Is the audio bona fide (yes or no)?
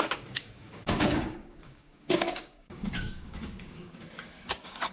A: no